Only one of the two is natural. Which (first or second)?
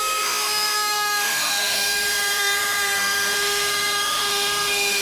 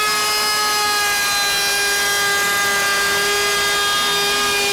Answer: second